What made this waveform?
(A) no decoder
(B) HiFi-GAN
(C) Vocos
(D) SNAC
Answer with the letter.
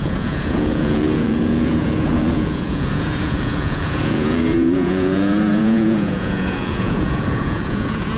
C